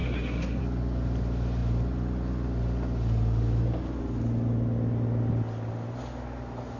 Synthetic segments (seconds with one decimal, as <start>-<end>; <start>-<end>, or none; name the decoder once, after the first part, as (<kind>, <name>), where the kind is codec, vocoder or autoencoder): 0.0-0.6 (codec, SNAC)